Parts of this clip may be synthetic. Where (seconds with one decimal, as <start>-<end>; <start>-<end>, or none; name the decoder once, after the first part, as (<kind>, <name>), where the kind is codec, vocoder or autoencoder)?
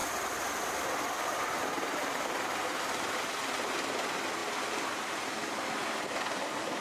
none